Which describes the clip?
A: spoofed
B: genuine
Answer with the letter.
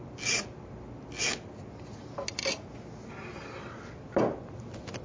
B